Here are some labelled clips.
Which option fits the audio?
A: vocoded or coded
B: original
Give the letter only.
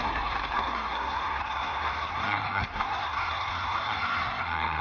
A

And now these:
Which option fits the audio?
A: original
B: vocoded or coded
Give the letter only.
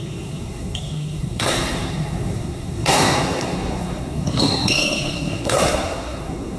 B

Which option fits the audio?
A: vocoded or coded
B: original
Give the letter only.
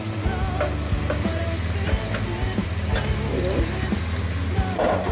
B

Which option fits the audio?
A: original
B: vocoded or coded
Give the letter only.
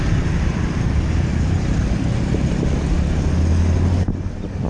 A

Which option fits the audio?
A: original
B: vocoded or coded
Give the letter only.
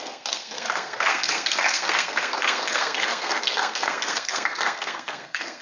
B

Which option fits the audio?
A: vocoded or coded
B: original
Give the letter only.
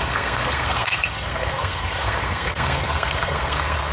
A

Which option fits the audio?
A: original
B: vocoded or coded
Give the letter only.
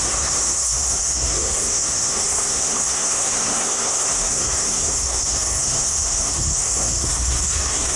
B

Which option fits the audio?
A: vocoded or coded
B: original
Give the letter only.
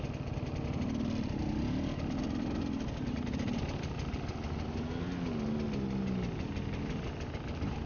B